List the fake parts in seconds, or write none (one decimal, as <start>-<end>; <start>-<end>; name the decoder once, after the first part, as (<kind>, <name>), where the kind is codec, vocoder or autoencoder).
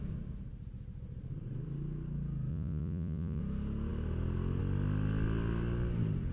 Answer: 2.5-3.4 (vocoder, Vocos)